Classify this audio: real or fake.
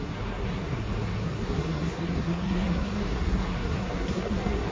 fake